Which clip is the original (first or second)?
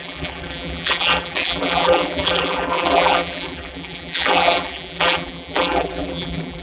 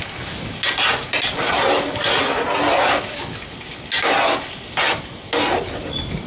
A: second